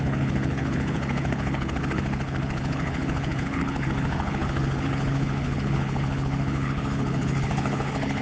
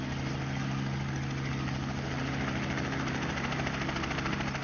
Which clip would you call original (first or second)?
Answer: second